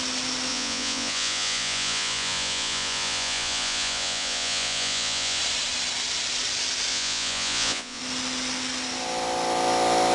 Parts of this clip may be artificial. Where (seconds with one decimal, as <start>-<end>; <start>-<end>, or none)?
0.5-5.4; 6.9-8.0